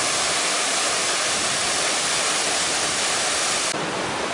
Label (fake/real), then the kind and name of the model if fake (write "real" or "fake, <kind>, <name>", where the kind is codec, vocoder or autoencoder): real